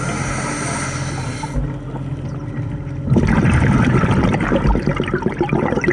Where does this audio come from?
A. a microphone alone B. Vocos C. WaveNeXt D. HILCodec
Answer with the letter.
A